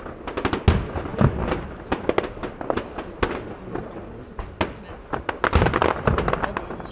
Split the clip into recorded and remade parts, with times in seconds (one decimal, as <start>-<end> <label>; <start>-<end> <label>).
0.0-6.9 recorded